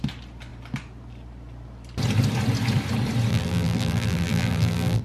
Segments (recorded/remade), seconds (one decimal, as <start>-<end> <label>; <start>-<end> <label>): 0.0-3.3 recorded; 3.3-5.0 remade